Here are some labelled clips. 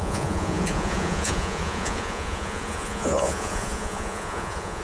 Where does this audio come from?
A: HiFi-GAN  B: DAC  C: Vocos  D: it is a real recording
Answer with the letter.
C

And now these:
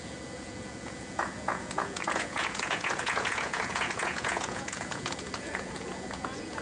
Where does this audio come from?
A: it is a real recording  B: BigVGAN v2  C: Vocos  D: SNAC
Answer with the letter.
C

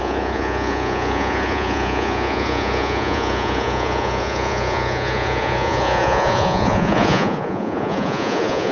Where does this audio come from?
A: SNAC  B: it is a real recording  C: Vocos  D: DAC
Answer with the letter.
C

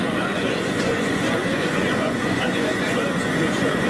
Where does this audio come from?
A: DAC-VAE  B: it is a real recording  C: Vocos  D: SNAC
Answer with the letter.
C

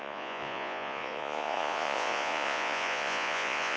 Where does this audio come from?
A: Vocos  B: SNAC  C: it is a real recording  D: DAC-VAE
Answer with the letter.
A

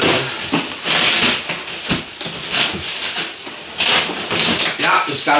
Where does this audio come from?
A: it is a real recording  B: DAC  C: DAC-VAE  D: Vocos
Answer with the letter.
A